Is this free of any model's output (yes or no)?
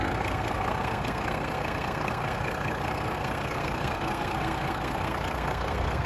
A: no